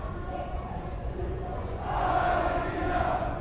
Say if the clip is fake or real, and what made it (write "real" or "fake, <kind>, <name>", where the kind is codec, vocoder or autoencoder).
fake, vocoder, Vocos